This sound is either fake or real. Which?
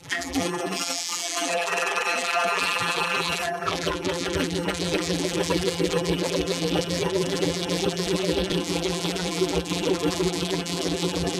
fake